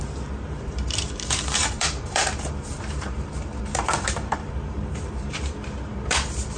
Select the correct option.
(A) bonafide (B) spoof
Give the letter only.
B